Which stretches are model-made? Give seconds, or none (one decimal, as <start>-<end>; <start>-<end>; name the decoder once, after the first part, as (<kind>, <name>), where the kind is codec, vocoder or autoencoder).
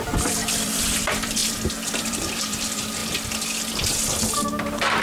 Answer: 0.0-1.4 (vocoder, BigVGAN v2); 2.0-3.0; 4.6-5.0